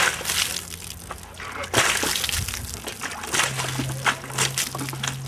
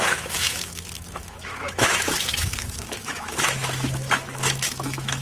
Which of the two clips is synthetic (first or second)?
second